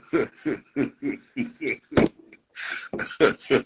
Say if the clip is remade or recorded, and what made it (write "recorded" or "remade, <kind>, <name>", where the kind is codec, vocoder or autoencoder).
recorded